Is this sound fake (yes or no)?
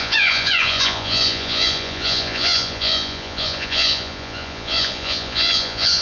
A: yes